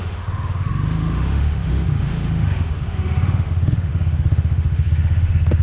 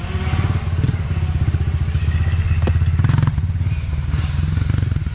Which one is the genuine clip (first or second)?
second